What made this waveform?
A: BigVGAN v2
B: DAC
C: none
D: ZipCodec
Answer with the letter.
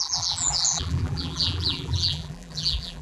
A